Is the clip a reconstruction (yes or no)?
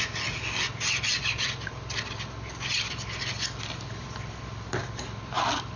no